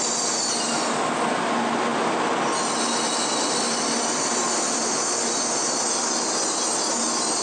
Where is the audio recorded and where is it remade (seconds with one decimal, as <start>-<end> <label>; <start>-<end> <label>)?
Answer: 0.0-7.4 recorded